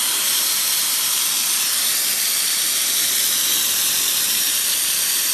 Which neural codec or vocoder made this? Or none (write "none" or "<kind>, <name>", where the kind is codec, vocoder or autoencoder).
none